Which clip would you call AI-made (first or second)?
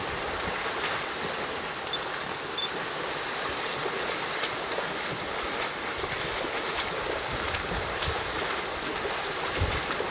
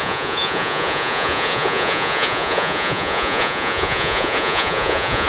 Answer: second